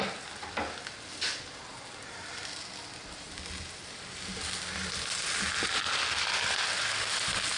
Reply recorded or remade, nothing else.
recorded